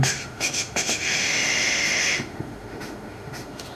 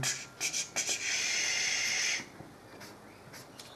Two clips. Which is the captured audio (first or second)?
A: second